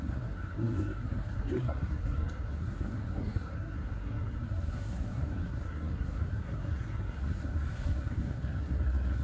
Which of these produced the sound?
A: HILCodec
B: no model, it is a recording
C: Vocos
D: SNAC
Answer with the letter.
D